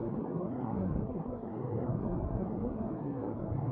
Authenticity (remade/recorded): remade